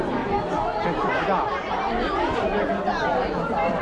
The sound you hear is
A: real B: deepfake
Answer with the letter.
A